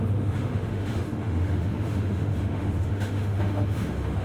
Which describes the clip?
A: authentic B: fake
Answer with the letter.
B